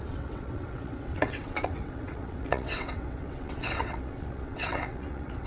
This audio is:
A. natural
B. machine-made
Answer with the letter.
B